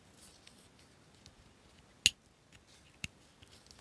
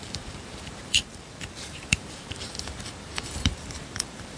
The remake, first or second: second